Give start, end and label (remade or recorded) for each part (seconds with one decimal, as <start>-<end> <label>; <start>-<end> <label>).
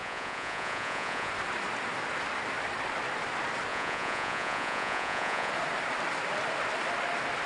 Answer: 0.0-1.3 remade; 1.3-3.7 recorded; 3.7-5.5 remade; 5.5-7.5 recorded